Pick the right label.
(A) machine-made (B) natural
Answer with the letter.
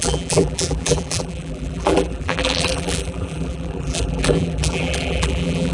A